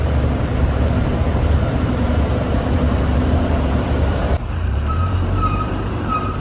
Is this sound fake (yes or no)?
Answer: yes